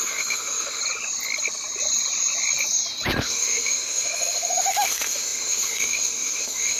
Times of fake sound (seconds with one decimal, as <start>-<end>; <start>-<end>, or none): 0.0-0.8; 3.2-6.8